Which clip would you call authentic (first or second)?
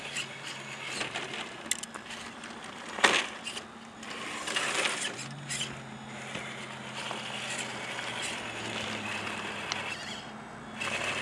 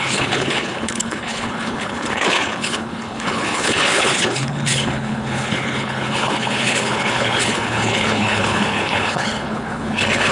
first